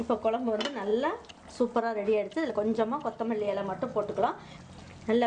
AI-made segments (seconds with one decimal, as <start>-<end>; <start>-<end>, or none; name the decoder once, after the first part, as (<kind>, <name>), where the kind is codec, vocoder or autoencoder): none